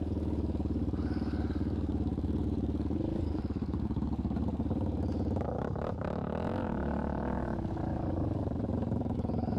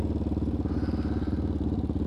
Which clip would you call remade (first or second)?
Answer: first